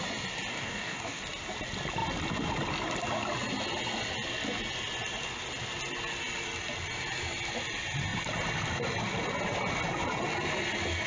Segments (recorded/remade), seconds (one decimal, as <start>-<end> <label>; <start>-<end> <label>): 0.0-0.5 recorded; 0.5-1.2 remade; 1.2-11.1 recorded